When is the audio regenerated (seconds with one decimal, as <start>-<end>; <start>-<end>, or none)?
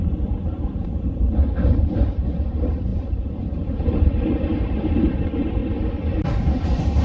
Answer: 0.0-5.6; 6.1-7.0